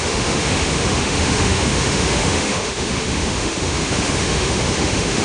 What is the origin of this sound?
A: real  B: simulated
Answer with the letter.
B